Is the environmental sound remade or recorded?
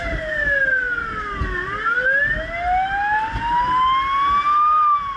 recorded